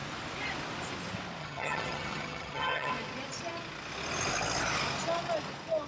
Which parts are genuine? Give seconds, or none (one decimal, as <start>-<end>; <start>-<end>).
0.0-1.4; 2.9-5.9